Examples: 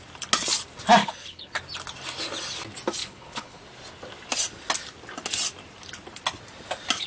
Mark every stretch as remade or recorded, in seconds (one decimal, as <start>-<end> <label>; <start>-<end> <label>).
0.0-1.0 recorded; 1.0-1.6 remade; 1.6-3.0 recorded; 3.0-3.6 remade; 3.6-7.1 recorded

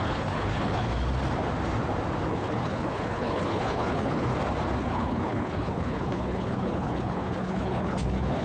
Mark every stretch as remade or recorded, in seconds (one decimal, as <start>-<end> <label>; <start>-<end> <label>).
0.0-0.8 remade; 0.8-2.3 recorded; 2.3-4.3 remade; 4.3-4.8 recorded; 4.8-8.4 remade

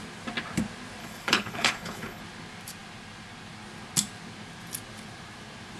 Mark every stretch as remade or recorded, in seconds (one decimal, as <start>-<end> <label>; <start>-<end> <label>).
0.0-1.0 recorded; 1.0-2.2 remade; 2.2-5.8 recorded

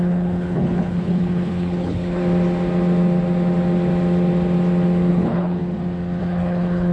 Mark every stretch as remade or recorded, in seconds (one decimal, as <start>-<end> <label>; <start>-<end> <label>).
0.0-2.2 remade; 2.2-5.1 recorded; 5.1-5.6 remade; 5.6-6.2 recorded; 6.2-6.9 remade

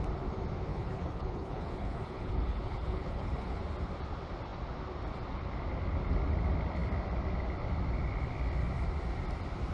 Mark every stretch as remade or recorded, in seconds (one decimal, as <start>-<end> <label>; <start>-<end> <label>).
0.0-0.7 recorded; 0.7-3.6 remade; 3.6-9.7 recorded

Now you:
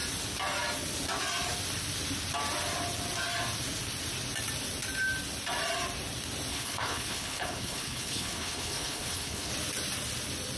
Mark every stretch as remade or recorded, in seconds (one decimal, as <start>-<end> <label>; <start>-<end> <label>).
0.0-6.5 recorded; 6.5-9.5 remade; 9.5-10.6 recorded

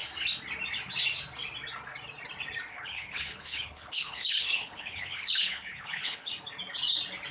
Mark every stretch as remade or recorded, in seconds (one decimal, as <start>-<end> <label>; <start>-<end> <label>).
0.0-2.7 recorded; 2.7-6.3 remade; 6.3-7.3 recorded